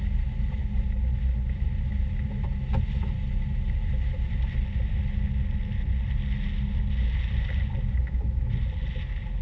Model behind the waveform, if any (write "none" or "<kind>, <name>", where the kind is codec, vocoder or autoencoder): none